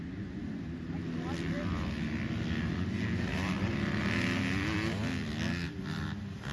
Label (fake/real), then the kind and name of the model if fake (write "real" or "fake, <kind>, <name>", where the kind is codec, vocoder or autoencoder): real